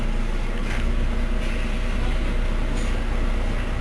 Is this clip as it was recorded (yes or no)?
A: yes